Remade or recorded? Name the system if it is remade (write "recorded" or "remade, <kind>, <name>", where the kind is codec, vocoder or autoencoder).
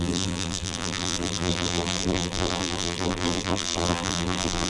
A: remade, vocoder, BigVGAN v2